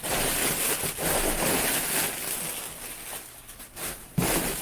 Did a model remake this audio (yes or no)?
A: no